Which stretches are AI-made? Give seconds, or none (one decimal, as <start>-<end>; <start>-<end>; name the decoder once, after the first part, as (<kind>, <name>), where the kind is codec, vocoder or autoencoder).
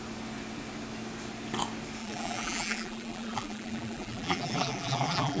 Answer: 2.0-5.4 (vocoder, BigVGAN v2)